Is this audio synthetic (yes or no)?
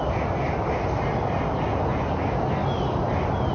no